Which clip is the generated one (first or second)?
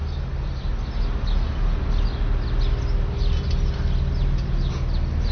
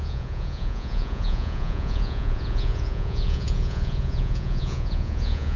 second